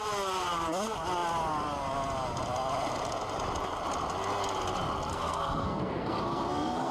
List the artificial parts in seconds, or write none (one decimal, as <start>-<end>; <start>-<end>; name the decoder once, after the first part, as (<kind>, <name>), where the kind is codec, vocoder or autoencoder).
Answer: 5.1-6.9 (codec, SNAC)